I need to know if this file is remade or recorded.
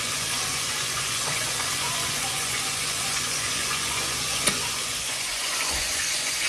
remade